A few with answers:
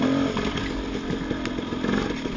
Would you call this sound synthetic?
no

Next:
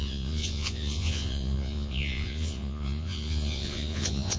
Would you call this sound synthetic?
yes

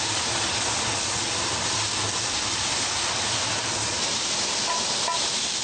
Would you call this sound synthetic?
no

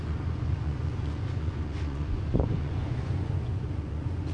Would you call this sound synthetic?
yes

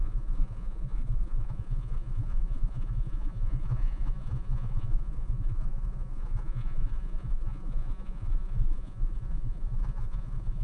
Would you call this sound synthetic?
yes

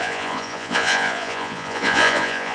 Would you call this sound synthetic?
yes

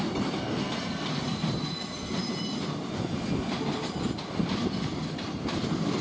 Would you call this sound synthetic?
no